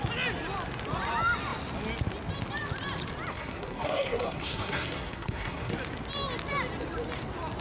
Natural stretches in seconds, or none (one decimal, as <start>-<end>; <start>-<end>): 0.0-3.3; 5.7-7.6